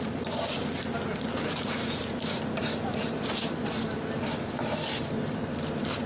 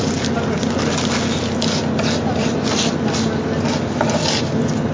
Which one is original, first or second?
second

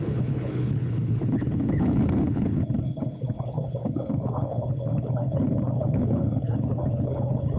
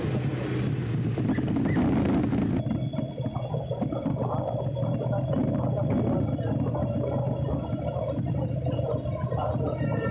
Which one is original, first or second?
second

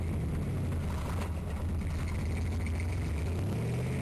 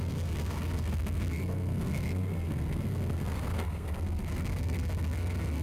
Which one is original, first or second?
first